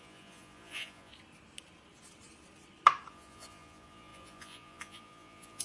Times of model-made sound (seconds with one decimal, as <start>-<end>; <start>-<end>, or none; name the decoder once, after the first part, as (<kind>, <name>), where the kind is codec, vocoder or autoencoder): 0.0-1.1 (vocoder, Vocos); 3.1-5.6